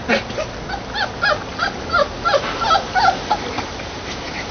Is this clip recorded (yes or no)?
yes